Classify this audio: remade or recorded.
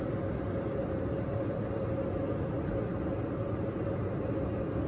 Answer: recorded